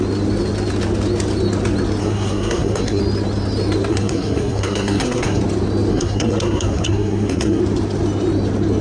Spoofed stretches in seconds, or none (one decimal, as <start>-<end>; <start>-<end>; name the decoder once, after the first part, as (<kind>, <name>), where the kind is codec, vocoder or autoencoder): 2.0-3.0 (codec, SNAC); 3.9-5.4; 5.9-7.6